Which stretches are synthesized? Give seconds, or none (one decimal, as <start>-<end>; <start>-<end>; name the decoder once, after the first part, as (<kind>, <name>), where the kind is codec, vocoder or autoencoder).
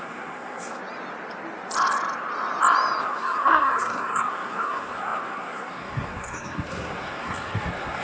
0.0-0.8 (codec, SNAC); 3.0-8.0